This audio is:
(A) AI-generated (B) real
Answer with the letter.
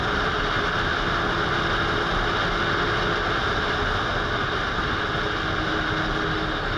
B